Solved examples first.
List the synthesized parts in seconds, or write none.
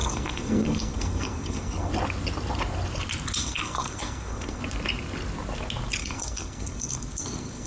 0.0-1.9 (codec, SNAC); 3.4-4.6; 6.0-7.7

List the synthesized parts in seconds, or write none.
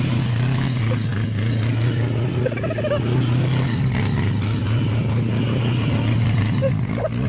none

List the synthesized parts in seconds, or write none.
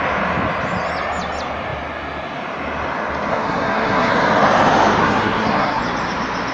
3.3-4.1 (codec, SNAC); 5.0-5.8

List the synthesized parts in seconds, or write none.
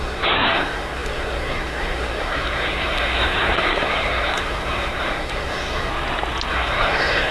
0.0-5.9 (codec, SNAC); 6.5-7.3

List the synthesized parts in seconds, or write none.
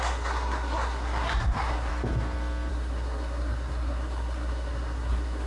0.0-1.9 (codec, SNAC); 2.7-5.5